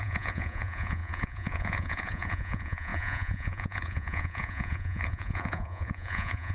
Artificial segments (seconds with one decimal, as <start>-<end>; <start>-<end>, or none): 0.0-6.5